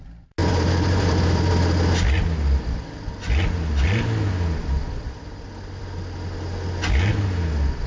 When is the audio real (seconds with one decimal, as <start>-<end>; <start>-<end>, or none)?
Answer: 0.0-0.4; 1.5-7.9